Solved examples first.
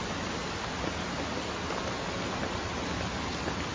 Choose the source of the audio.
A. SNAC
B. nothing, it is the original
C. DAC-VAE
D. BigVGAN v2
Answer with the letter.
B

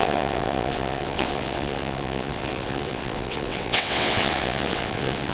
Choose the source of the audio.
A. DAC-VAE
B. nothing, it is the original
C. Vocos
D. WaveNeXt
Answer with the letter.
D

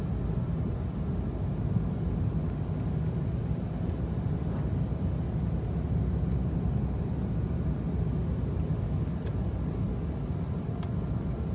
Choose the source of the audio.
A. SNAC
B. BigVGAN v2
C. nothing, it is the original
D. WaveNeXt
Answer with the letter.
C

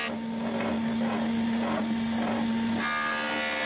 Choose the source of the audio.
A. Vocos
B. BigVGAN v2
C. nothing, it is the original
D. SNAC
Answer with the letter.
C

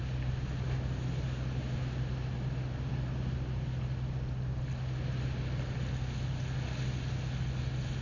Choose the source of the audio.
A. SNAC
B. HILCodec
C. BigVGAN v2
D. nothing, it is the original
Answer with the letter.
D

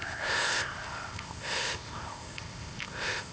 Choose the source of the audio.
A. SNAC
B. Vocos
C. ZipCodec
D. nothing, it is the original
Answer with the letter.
C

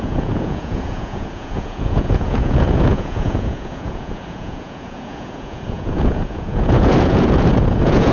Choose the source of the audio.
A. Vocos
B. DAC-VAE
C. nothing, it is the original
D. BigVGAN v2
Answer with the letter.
A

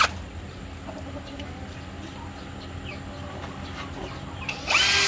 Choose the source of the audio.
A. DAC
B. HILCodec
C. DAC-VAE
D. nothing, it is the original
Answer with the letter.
D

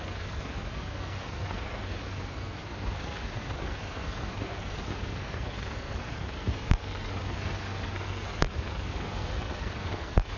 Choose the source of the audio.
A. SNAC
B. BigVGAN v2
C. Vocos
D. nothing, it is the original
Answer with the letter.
A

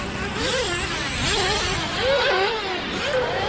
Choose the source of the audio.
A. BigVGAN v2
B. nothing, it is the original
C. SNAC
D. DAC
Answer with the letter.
B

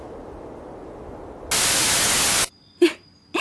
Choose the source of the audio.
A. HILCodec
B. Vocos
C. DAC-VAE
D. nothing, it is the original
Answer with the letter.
D